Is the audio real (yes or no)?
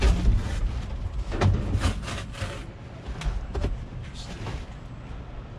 yes